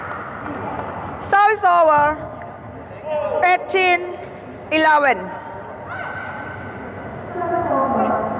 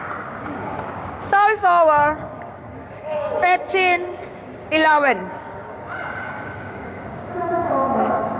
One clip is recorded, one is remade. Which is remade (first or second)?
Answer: second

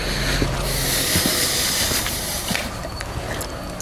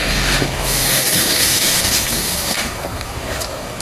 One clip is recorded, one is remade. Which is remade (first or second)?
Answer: second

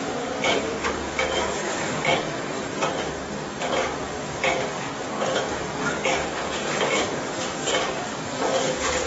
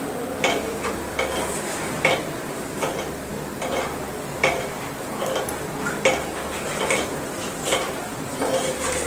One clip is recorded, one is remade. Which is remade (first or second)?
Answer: first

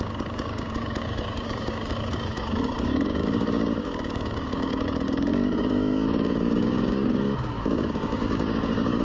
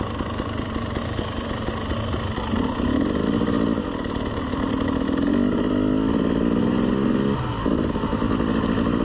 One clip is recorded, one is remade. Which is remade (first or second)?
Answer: first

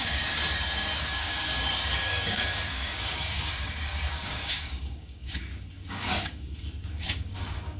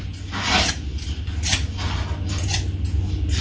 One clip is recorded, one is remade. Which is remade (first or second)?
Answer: first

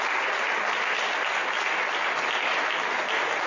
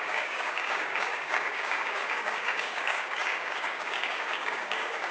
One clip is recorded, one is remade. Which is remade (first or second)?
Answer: second